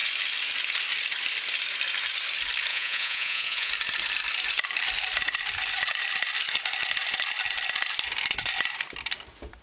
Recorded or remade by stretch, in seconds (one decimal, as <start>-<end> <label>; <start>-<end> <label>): 0.0-2.7 recorded; 2.7-3.7 remade; 3.7-9.6 recorded